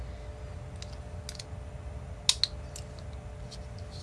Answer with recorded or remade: recorded